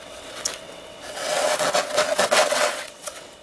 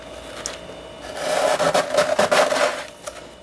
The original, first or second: second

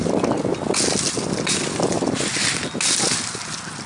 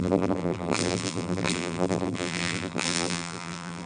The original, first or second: first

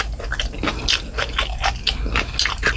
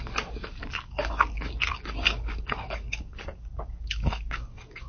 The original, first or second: first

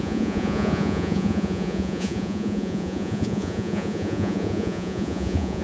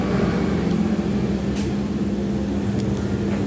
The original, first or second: second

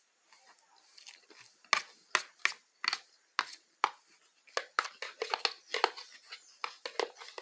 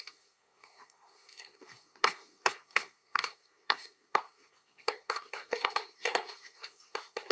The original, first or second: first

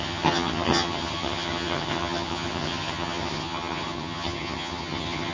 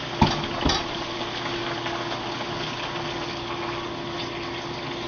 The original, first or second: second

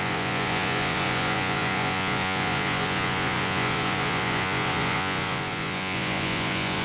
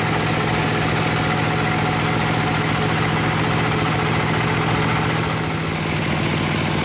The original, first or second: second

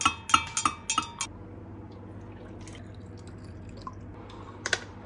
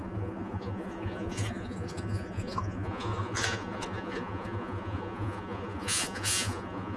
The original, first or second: first